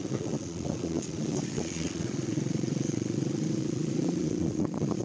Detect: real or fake fake